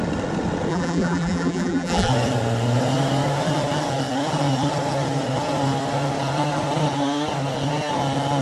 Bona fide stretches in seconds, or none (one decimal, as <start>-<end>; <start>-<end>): 0.0-0.7; 2.1-8.4